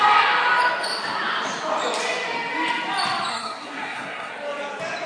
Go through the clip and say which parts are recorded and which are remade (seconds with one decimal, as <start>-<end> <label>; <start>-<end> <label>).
0.0-3.3 recorded; 3.3-4.3 remade; 4.3-5.1 recorded